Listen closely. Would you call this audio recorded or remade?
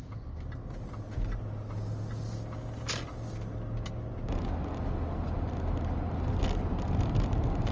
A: recorded